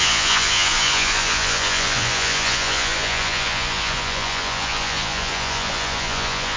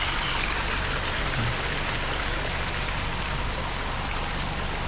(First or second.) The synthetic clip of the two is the first